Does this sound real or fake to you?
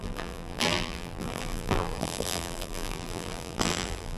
fake